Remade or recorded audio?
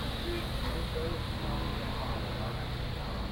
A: recorded